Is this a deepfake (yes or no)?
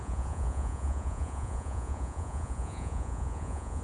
yes